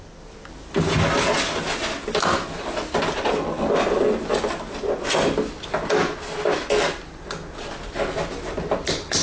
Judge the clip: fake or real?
real